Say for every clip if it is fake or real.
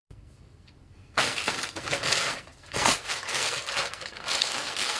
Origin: fake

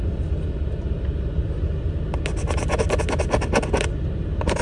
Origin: real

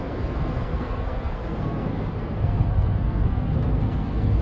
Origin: fake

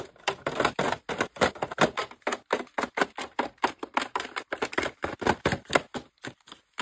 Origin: real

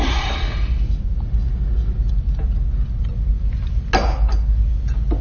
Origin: real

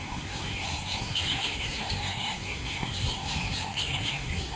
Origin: fake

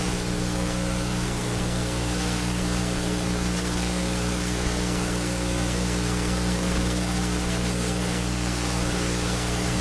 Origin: fake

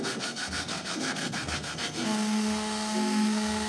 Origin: fake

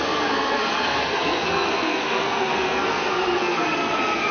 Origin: fake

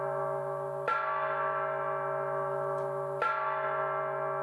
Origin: real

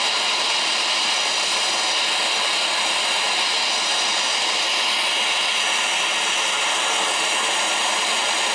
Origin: real